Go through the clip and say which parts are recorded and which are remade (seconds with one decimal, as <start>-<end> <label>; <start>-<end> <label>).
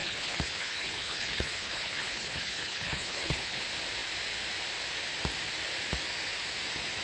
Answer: 0.0-3.6 remade; 3.6-7.0 recorded